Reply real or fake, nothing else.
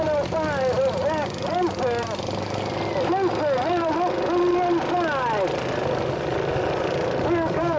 real